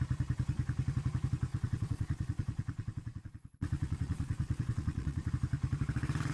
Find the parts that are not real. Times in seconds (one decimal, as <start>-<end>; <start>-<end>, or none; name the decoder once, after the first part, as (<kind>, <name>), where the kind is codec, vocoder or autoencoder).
1.5-5.3 (vocoder, Vocos)